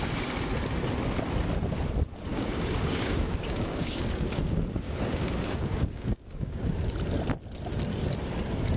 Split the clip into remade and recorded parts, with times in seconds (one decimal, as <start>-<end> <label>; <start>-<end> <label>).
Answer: 0.0-2.3 recorded; 2.3-6.7 remade; 6.7-8.8 recorded